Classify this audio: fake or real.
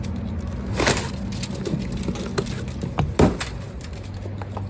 real